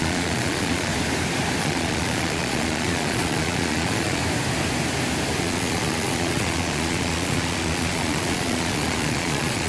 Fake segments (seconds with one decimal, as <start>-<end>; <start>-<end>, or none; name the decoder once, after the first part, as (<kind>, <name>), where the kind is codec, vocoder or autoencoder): 0.0-0.9 (vocoder, Vocos); 1.6-4.2; 5.4-9.7